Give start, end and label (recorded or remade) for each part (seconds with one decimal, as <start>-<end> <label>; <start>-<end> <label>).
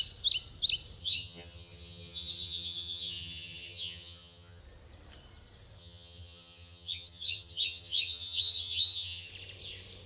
0.0-1.0 recorded; 1.0-4.6 remade; 4.6-5.8 recorded; 5.8-9.3 remade; 9.3-10.1 recorded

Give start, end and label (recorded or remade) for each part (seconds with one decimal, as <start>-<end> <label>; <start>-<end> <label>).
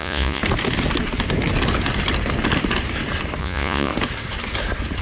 0.0-0.4 remade; 0.4-3.4 recorded; 3.4-3.9 remade; 3.9-5.0 recorded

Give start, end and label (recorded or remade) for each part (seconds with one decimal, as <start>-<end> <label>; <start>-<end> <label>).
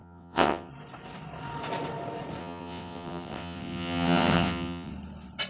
0.0-0.7 remade; 0.7-2.4 recorded; 2.4-4.9 remade; 4.9-5.5 recorded